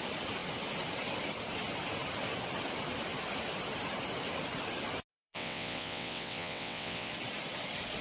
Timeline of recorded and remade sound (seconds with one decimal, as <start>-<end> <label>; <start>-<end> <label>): 0.0-5.1 recorded; 5.1-7.1 remade; 7.1-8.0 recorded